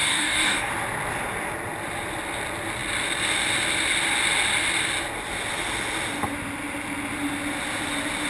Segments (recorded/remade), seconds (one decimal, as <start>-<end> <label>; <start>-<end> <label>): 0.0-0.7 remade; 0.7-8.3 recorded